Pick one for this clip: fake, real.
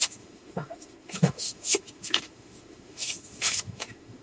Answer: fake